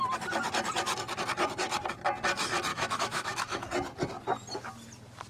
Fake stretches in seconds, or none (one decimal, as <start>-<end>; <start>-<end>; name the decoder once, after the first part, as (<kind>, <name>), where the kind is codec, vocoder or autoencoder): 2.7-3.7 (autoencoder, DAC-VAE)